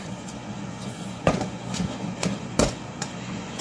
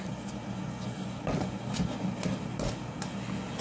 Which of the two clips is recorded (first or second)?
second